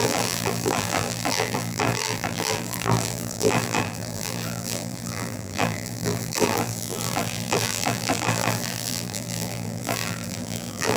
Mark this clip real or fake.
fake